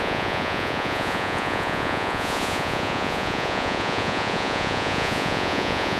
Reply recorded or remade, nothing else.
remade